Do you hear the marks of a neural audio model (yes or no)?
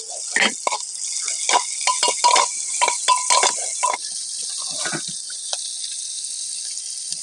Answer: no